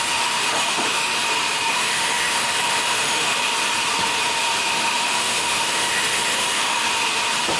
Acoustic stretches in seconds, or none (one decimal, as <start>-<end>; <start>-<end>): 1.2-1.7; 3.4-4.6; 6.8-7.6